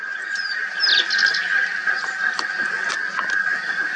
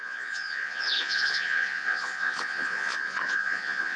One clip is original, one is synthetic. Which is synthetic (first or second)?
second